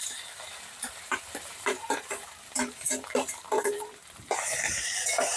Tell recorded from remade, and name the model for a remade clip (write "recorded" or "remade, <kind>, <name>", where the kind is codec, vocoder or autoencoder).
remade, vocoder, BigVGAN v2